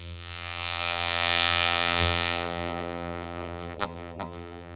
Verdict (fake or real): fake